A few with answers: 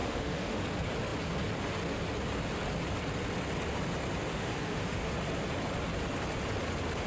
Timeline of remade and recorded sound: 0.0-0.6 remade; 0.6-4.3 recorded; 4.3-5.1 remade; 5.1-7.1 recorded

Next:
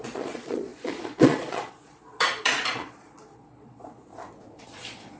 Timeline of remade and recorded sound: 0.0-4.1 remade; 4.1-4.6 recorded; 4.6-5.2 remade

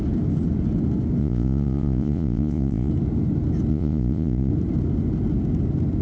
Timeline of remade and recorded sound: 0.0-1.2 recorded; 1.2-2.9 remade; 2.9-3.7 recorded; 3.7-4.5 remade; 4.5-6.0 recorded

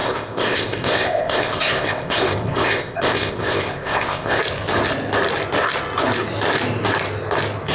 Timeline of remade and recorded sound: 0.0-4.4 remade; 4.4-7.7 recorded

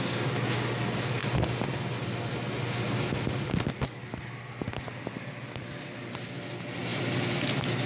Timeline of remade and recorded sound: 0.0-7.9 recorded

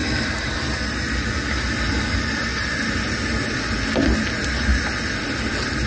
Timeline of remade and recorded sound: 0.0-5.9 recorded

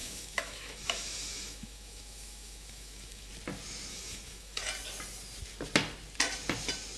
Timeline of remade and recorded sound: 0.0-3.3 remade; 3.3-3.9 recorded; 3.9-4.6 remade; 4.6-7.0 recorded